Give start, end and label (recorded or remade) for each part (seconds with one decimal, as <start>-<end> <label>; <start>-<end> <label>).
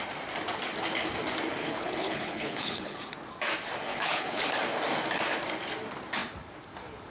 0.0-1.6 recorded; 1.6-3.0 remade; 3.0-3.9 recorded; 3.9-4.5 remade; 4.5-7.1 recorded